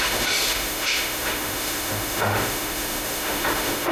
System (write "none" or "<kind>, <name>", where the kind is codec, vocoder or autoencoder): autoencoder, DAC-VAE